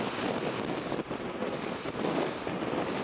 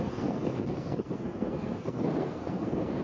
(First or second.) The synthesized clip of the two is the second